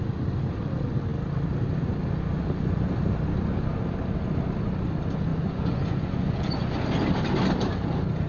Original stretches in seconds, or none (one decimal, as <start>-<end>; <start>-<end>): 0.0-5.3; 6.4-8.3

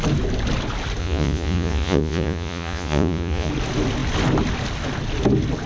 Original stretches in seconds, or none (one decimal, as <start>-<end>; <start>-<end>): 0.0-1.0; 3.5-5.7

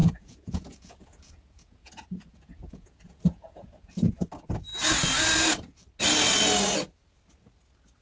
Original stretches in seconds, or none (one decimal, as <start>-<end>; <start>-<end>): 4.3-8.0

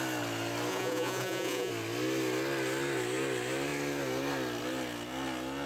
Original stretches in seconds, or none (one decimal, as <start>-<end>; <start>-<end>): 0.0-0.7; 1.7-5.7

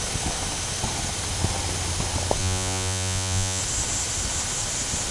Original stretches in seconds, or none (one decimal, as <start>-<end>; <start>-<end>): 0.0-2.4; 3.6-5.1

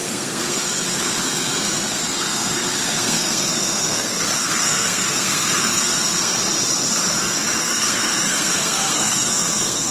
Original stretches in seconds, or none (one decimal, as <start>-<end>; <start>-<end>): 6.3-7.6

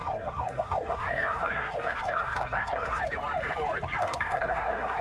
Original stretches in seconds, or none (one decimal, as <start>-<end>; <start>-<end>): 3.0-4.0